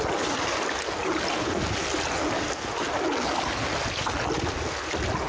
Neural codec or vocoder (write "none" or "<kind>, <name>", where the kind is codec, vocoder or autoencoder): none